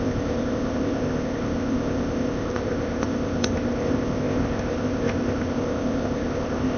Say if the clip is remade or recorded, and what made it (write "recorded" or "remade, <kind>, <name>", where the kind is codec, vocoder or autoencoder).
remade, codec, ZipCodec